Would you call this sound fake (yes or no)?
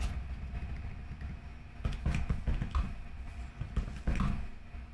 no